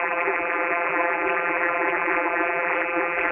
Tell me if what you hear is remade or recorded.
remade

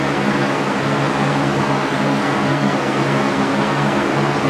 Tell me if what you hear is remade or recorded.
remade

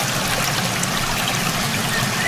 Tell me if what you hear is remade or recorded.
recorded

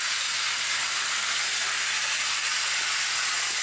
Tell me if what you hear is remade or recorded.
recorded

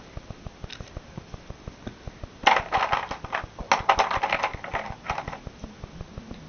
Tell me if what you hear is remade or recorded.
recorded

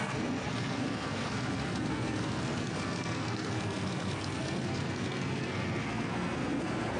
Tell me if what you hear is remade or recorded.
remade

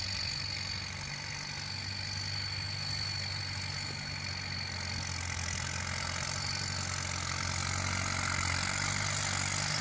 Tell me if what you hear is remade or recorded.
recorded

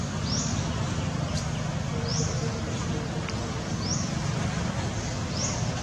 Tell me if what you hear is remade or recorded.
recorded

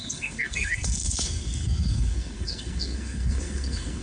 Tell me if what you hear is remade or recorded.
remade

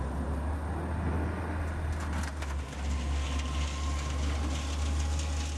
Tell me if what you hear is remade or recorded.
recorded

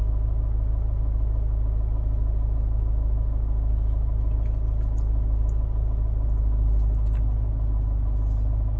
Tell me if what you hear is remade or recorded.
recorded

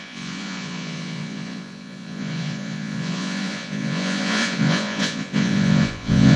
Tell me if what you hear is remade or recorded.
remade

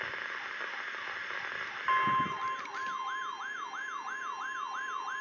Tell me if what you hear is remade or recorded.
recorded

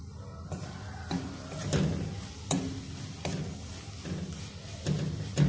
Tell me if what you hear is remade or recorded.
recorded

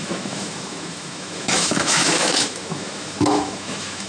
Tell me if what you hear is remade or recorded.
remade